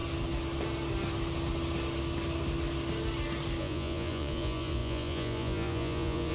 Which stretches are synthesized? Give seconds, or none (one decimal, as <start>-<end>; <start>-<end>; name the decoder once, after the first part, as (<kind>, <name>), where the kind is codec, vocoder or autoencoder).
3.6-6.3 (vocoder, Vocos)